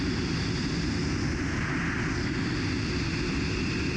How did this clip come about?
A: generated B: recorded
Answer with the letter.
B